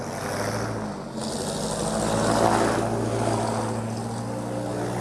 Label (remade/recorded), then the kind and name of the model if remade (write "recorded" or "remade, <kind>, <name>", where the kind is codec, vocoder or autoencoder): recorded